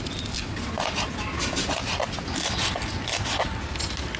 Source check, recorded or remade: recorded